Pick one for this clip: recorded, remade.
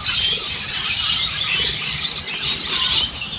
recorded